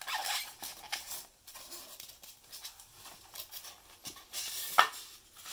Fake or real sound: real